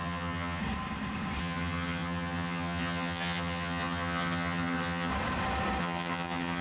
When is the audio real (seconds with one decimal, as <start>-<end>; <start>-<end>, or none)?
0.6-1.4; 5.1-5.8